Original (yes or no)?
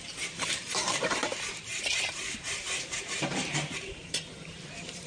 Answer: no